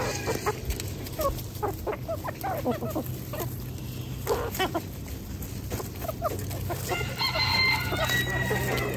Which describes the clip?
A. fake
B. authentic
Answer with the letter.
B